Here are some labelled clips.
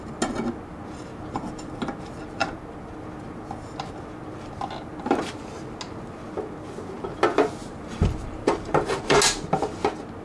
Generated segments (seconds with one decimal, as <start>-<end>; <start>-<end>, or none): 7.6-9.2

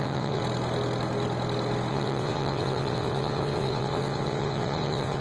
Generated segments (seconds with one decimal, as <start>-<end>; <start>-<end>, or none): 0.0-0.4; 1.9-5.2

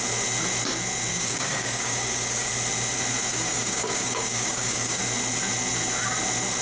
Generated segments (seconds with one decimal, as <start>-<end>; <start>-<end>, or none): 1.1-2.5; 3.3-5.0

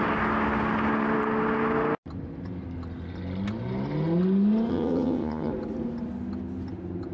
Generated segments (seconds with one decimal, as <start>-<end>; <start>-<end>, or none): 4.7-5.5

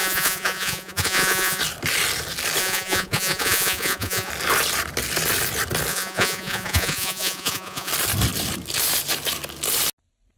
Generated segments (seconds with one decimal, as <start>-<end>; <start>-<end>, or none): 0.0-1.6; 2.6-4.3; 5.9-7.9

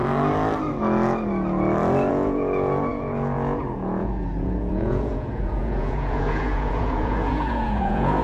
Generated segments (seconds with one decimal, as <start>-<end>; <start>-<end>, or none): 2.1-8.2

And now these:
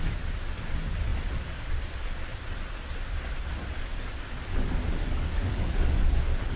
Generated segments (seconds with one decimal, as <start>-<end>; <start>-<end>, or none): 5.0-6.6